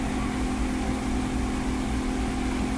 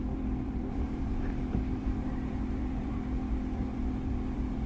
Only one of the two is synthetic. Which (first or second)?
second